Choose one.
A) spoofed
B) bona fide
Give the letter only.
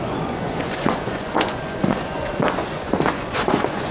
A